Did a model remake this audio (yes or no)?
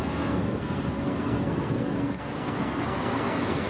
yes